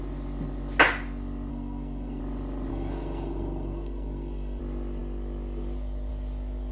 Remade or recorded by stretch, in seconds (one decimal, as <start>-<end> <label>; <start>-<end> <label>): 0.0-1.5 recorded; 1.5-2.2 remade; 2.2-2.7 recorded; 2.7-4.6 remade; 4.6-6.7 recorded